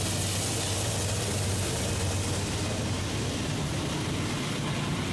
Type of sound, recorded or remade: recorded